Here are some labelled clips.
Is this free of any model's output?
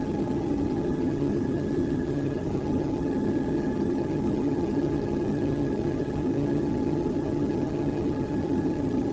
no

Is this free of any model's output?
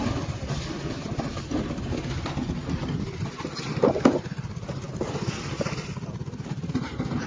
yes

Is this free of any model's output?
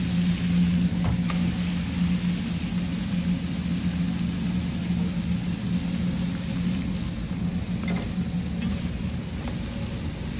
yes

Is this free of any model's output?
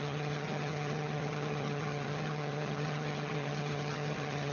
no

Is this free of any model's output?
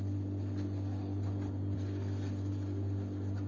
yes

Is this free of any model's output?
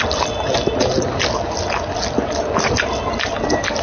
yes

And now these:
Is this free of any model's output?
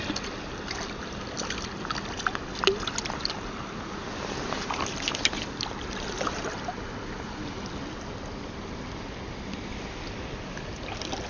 yes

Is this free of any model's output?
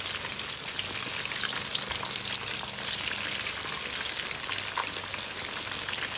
yes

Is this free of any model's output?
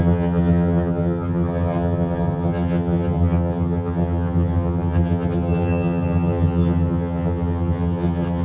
no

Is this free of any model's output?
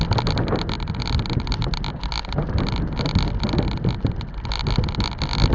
yes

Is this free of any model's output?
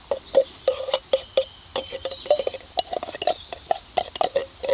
yes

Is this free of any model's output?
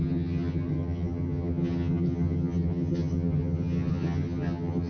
no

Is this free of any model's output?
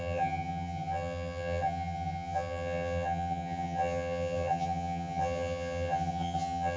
no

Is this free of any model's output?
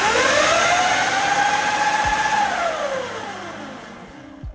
yes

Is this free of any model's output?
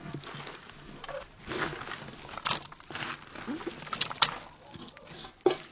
yes